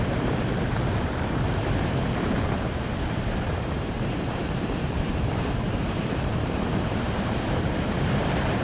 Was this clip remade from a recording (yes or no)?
yes